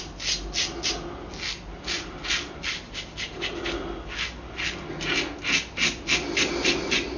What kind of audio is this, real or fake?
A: real